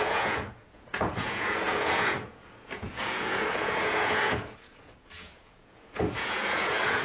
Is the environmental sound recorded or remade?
remade